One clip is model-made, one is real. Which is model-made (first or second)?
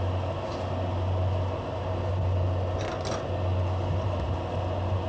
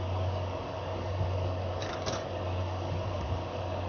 second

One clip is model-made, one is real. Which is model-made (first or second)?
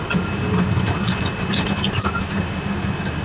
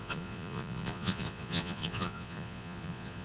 second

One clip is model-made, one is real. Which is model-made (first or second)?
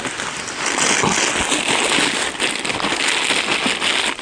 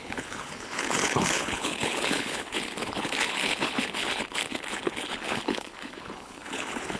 second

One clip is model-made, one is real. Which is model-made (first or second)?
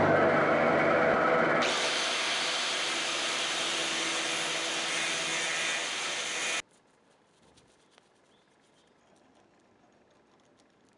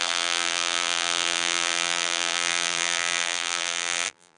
second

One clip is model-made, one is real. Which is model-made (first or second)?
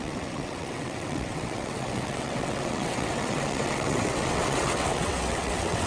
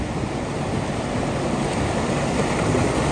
first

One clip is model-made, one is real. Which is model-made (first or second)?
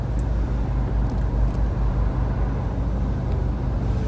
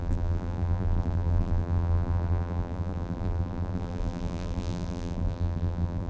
second